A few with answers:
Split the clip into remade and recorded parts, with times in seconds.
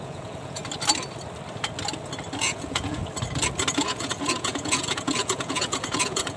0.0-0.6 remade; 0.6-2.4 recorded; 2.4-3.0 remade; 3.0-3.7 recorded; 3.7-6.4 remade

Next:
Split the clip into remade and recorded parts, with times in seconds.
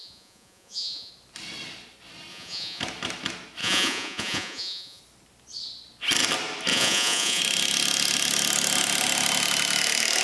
0.0-1.1 remade; 1.1-2.3 recorded; 2.3-2.8 remade; 2.8-3.6 recorded; 3.6-5.0 remade; 5.0-6.7 recorded; 6.7-7.4 remade; 7.4-10.2 recorded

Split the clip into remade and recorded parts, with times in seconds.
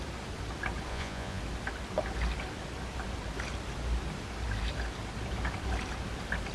0.0-0.9 recorded; 0.9-1.4 remade; 1.4-6.5 recorded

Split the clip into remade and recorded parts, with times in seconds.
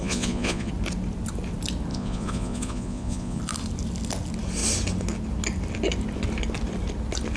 0.0-0.7 remade; 0.7-1.9 recorded; 1.9-3.4 remade; 3.4-7.4 recorded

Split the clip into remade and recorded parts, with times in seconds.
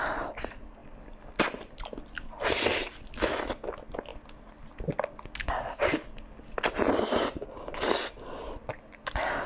0.0-9.5 recorded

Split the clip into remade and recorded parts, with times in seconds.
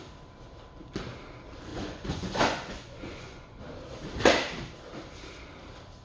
0.0-1.7 recorded; 1.7-3.6 remade; 3.6-6.0 recorded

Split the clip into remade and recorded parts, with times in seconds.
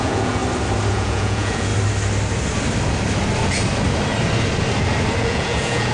0.0-0.4 remade; 0.4-0.9 recorded; 0.9-1.7 remade; 1.7-5.2 recorded; 5.2-5.9 remade